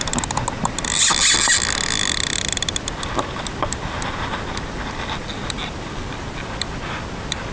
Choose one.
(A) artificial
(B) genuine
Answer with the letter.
B